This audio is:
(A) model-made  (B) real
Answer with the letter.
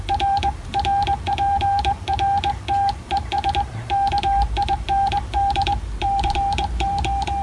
A